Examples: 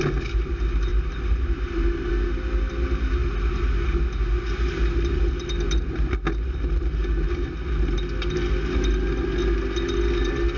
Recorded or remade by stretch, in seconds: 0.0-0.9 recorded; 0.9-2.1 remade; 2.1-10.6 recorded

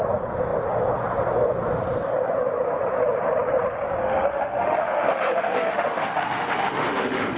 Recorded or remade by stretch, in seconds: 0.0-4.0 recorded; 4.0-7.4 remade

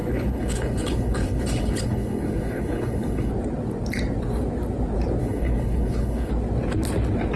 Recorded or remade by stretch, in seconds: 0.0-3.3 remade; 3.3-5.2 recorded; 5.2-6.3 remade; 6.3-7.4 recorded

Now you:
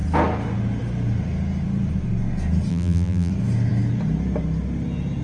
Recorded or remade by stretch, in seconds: 0.0-2.7 recorded; 2.7-3.3 remade; 3.3-5.2 recorded

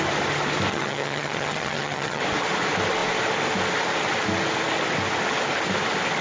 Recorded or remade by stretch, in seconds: 0.0-0.7 recorded; 0.7-2.2 remade; 2.2-6.2 recorded

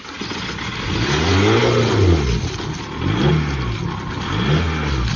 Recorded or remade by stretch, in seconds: 0.0-5.2 recorded